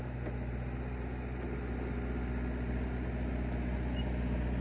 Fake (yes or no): no